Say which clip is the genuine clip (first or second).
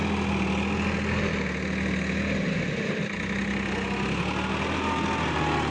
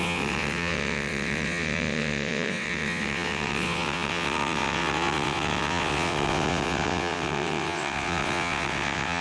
first